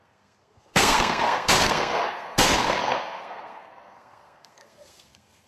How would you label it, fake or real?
fake